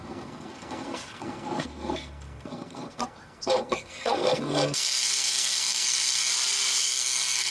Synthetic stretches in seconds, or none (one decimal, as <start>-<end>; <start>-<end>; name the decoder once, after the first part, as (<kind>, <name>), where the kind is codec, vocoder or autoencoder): 0.0-6.3 (codec, SNAC); 6.8-7.5